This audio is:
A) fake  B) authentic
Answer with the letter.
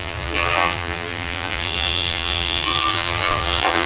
A